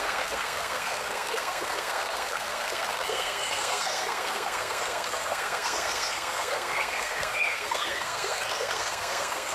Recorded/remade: remade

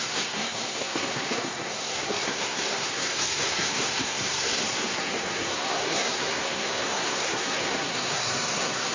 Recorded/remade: remade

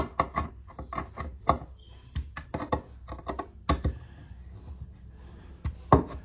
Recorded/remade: recorded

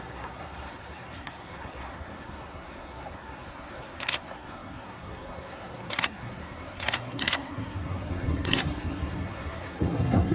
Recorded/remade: remade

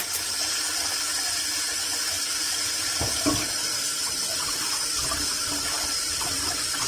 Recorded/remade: recorded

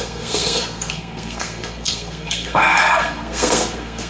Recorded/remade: remade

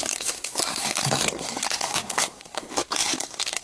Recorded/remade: remade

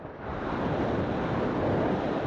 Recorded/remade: recorded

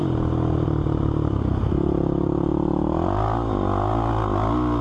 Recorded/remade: recorded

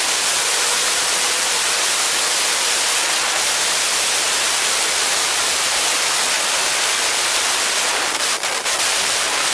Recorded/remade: recorded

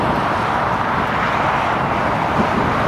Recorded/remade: recorded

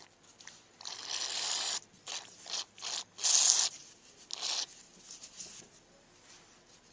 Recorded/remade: recorded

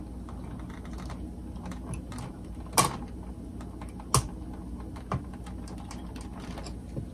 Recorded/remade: recorded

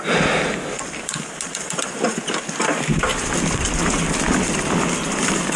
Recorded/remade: recorded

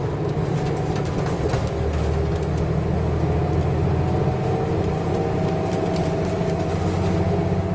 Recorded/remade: recorded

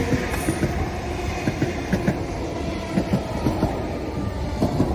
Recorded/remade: recorded